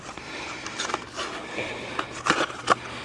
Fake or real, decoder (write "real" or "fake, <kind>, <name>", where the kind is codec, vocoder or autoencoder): real